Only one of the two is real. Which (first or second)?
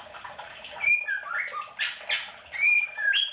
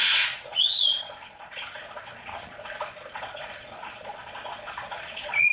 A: first